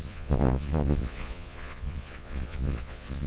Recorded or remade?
remade